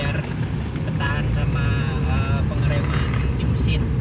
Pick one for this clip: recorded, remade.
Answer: recorded